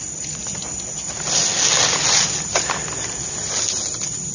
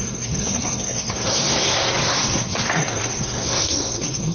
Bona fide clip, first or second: first